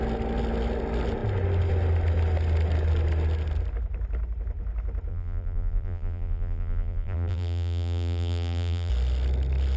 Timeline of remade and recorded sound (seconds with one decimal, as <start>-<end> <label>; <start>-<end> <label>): 0.0-5.1 recorded; 5.1-8.9 remade; 8.9-9.8 recorded